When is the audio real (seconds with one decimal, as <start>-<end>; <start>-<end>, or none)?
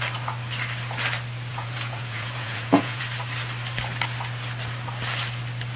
0.0-1.5; 3.0-5.8